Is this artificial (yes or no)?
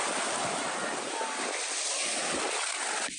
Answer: no